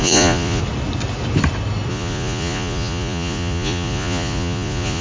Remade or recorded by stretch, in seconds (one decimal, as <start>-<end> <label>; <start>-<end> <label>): 0.0-0.6 remade; 0.6-1.9 recorded; 1.9-5.0 remade